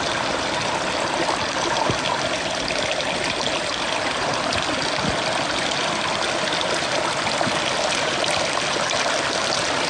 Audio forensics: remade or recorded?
recorded